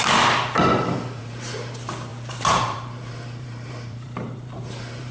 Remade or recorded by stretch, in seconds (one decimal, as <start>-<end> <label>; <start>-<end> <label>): 0.0-1.2 recorded; 1.2-1.7 remade; 1.7-2.1 recorded; 2.1-5.1 remade